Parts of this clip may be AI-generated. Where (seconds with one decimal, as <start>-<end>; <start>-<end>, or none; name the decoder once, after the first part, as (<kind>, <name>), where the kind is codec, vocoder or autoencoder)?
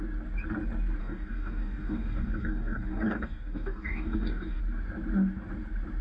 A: 1.0-4.6 (codec, DAC)